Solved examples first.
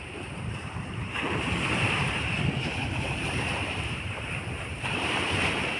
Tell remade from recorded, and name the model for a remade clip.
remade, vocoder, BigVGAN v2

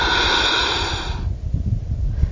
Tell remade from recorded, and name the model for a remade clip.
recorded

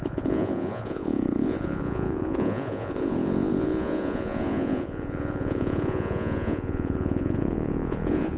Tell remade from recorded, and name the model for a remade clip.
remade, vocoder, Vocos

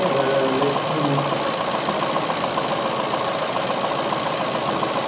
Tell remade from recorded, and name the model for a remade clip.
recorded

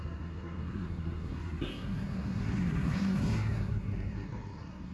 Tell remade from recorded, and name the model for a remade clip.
remade, codec, SNAC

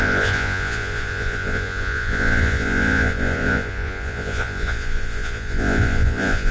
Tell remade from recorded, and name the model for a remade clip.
remade, vocoder, Vocos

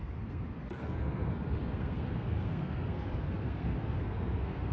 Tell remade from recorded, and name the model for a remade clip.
remade, codec, SNAC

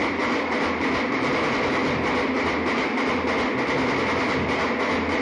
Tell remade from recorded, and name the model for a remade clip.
recorded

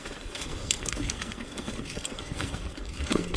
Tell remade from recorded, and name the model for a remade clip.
remade, codec, SNAC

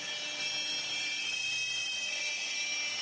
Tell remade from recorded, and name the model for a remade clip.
recorded